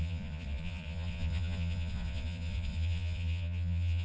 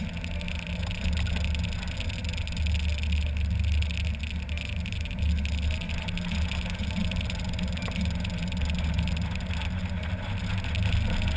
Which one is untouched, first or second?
second